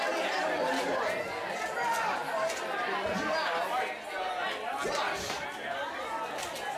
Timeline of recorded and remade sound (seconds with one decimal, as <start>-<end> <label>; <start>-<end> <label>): 0.0-6.8 recorded